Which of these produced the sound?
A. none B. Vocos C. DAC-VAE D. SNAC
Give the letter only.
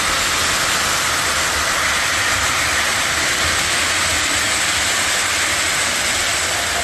A